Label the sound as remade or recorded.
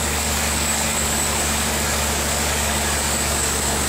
remade